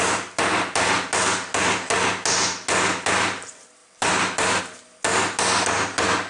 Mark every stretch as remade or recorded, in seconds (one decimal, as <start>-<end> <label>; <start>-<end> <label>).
0.0-3.8 recorded; 3.8-4.6 remade; 4.6-6.3 recorded